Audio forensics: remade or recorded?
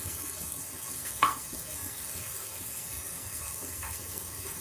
remade